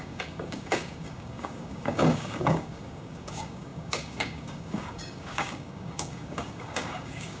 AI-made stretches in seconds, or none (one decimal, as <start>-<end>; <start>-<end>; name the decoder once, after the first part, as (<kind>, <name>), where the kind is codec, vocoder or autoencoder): 0.0-7.4 (codec, DAC)